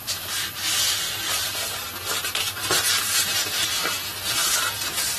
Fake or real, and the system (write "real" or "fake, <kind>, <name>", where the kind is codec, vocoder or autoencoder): fake, vocoder, BigVGAN v2